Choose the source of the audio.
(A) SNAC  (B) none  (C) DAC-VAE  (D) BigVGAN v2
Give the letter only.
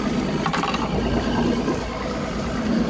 B